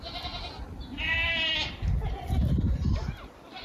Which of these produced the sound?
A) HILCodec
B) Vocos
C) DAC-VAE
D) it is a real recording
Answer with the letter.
D